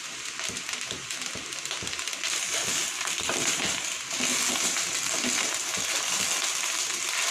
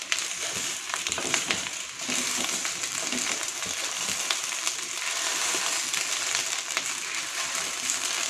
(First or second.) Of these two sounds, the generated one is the second